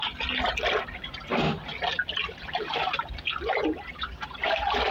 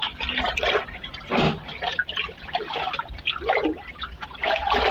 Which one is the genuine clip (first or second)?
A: first